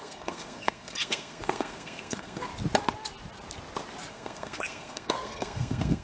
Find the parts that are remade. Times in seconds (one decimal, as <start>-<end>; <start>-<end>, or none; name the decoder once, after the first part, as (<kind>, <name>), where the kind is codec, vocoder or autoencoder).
0.0-2.5 (codec, SNAC); 4.1-6.0

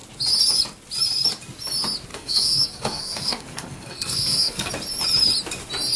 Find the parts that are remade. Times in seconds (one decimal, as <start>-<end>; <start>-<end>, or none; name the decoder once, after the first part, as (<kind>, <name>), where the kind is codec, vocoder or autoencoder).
2.1-4.7 (codec, SNAC)

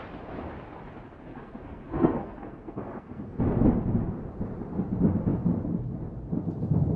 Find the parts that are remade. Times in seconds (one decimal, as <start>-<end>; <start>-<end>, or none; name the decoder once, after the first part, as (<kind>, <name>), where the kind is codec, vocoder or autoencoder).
1.3-3.4 (codec, SNAC)

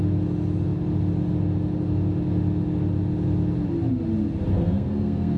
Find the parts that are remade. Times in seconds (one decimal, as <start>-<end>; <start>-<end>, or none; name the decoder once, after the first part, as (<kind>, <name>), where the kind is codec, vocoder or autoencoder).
4.5-5.4 (codec, SNAC)

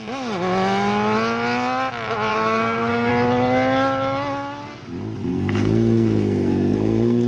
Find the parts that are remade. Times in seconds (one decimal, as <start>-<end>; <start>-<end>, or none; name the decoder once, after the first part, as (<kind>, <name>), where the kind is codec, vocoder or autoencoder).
2.3-3.1 (codec, SNAC); 5.3-7.3